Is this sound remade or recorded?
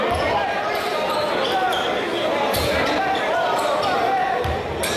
recorded